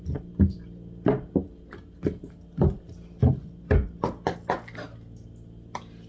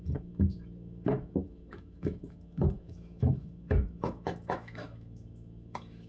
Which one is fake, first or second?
second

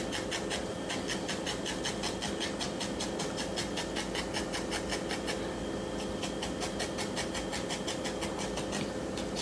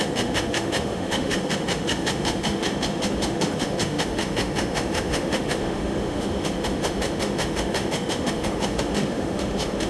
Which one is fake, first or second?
second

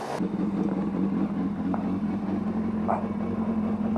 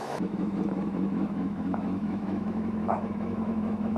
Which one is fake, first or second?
second